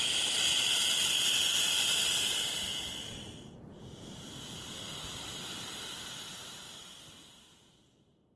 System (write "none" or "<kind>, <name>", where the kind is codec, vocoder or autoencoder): none